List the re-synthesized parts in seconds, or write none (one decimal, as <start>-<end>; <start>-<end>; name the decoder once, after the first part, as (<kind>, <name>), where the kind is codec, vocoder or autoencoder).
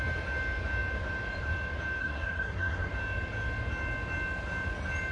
2.0-2.9 (codec, SNAC)